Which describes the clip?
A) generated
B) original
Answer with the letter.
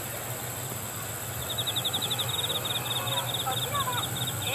B